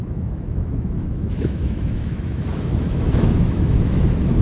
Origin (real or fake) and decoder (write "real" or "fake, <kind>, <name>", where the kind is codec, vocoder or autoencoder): fake, autoencoder, DAC-VAE